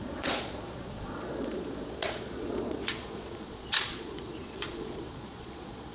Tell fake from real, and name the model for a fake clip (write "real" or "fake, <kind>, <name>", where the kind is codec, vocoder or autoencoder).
fake, vocoder, Vocos